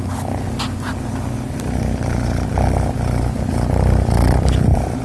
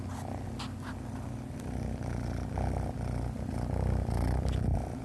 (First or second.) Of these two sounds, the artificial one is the first